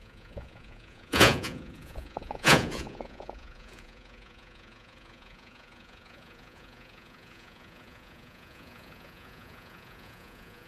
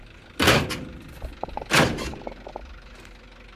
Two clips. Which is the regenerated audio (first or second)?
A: first